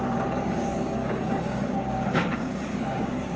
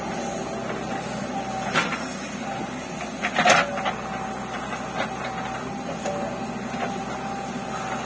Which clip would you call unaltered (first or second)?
second